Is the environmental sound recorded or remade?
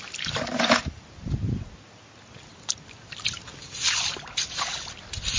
recorded